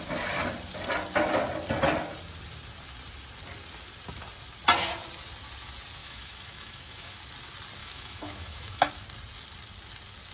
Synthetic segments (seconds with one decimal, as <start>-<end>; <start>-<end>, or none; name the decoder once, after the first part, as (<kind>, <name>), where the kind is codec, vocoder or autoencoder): 6.0-7.2 (autoencoder, DAC-VAE); 7.8-8.9